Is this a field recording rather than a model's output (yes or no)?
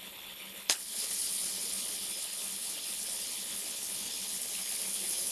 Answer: no